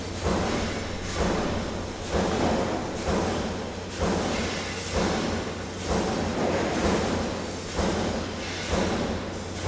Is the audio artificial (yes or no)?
no